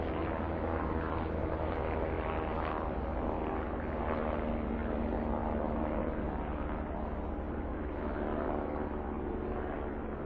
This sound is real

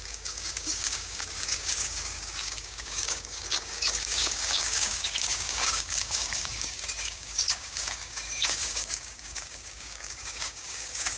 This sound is fake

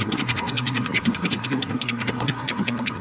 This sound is fake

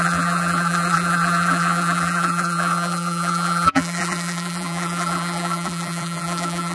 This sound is fake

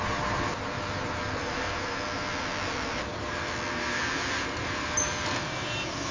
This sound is real